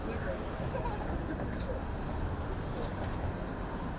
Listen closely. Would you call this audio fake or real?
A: real